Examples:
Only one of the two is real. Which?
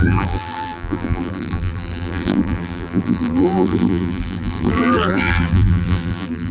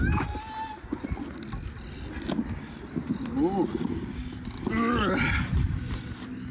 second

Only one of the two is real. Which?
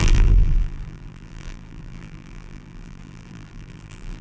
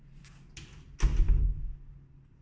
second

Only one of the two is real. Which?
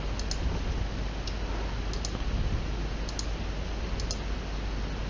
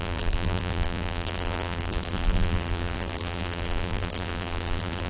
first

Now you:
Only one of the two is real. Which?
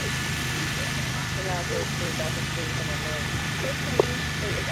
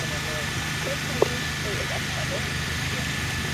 second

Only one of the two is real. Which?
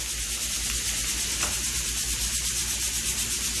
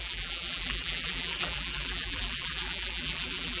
first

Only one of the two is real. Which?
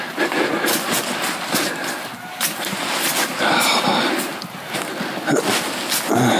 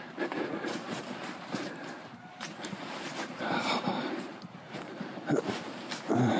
first